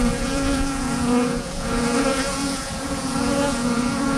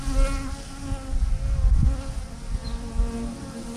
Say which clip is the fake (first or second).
first